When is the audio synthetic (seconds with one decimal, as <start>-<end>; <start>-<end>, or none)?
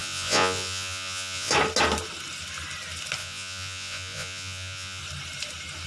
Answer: 0.0-1.5; 3.2-5.0